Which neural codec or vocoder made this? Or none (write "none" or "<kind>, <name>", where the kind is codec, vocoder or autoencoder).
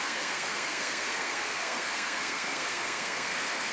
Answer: codec, SNAC